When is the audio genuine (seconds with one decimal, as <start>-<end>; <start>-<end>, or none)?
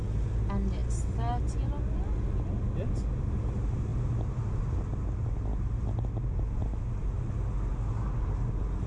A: 0.0-8.9